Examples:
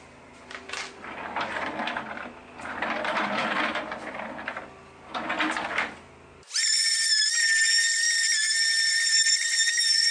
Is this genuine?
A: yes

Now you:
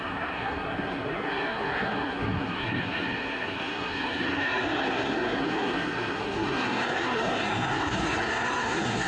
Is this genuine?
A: no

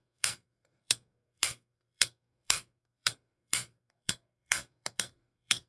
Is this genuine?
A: no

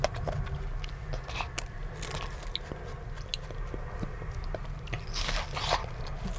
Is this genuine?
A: yes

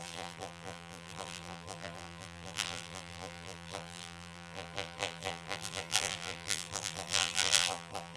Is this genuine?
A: no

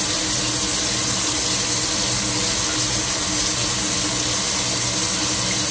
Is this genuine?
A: yes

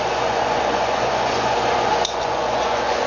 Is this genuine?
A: no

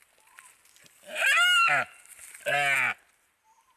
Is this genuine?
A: yes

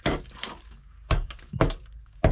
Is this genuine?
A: no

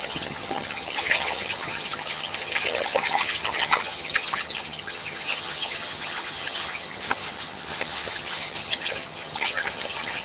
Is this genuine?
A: no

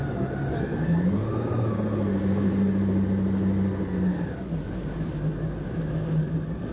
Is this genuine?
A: yes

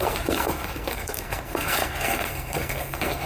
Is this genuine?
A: no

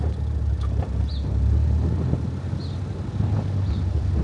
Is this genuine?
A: yes